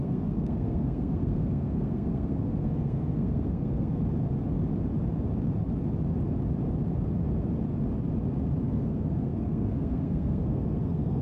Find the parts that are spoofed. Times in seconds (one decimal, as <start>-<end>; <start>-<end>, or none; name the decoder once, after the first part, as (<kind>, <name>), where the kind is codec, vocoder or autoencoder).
0.0-4.0 (codec, SNAC); 8.6-11.2